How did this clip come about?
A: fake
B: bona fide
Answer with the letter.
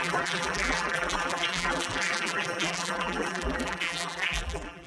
A